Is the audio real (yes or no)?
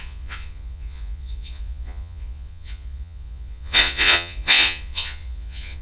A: no